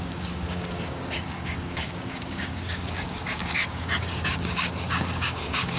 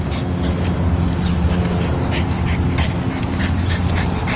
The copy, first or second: first